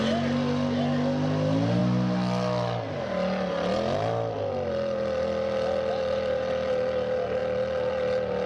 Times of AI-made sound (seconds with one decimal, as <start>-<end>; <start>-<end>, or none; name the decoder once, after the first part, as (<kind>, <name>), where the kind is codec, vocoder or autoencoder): none